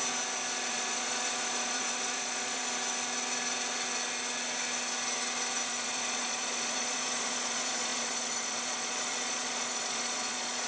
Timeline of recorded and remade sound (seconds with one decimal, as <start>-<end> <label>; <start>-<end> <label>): 0.0-0.7 recorded; 0.7-2.6 remade; 2.6-5.7 recorded; 5.7-10.7 remade